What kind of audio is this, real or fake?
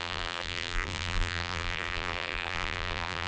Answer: fake